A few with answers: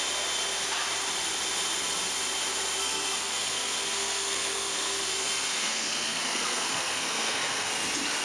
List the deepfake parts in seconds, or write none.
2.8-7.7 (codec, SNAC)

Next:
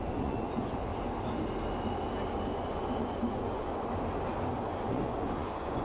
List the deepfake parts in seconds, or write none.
0.0-0.9 (vocoder, Vocos); 2.5-3.7; 4.7-5.8

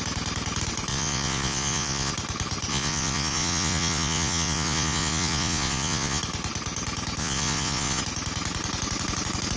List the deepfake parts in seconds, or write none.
0.9-2.1 (vocoder, Vocos); 2.7-6.2; 7.2-8.0